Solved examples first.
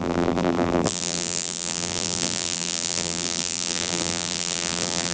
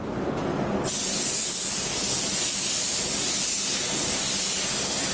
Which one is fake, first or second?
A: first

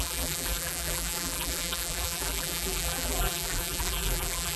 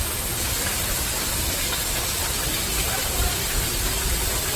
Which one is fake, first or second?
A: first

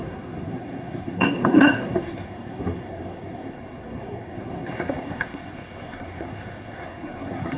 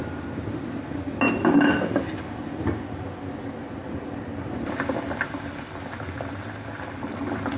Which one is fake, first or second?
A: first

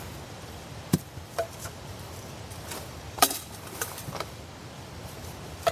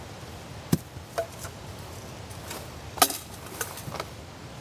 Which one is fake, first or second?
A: first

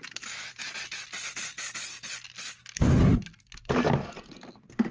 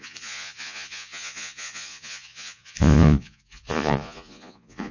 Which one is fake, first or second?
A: second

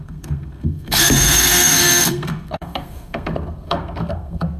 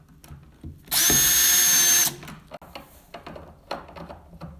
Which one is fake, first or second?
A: first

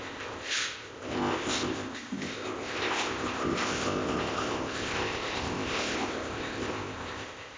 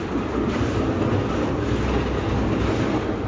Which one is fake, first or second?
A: first